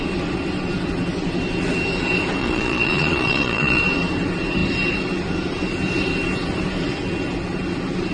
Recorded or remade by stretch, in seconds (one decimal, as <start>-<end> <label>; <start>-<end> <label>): 0.0-2.4 recorded; 2.4-3.8 remade; 3.8-8.1 recorded